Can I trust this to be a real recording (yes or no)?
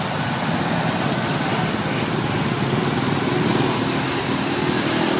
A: yes